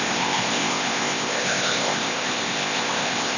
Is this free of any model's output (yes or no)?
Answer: no